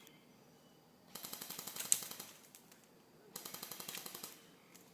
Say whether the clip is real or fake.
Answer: real